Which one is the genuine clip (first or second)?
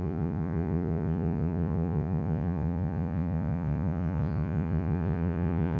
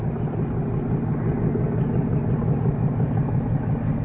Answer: second